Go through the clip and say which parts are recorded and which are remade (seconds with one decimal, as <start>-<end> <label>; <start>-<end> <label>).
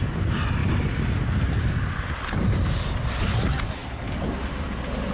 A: 0.0-5.1 recorded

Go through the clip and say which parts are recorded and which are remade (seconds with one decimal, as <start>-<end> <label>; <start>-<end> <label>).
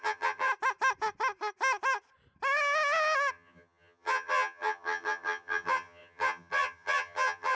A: 0.0-0.5 remade; 0.5-3.3 recorded; 3.3-7.5 remade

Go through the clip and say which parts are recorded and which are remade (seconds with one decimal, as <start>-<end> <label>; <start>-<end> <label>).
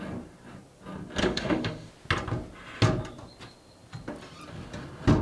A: 0.0-1.2 recorded; 1.2-1.9 remade; 1.9-5.2 recorded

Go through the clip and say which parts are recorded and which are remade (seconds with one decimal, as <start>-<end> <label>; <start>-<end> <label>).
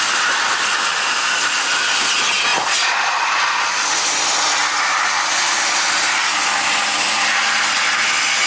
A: 0.0-8.5 recorded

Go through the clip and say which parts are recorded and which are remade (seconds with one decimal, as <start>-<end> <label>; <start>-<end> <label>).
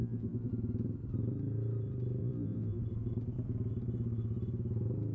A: 0.0-0.5 remade; 0.5-2.2 recorded; 2.2-2.8 remade; 2.8-5.1 recorded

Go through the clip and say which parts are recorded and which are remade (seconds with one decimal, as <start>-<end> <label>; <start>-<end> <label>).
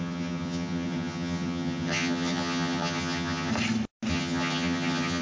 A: 0.0-3.5 remade; 3.5-4.1 recorded; 4.1-5.2 remade